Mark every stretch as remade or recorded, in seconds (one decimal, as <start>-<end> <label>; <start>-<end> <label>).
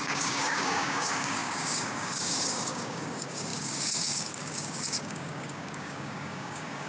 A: 0.0-6.9 remade